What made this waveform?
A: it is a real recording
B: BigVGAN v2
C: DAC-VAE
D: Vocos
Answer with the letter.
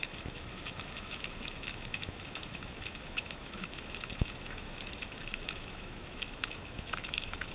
C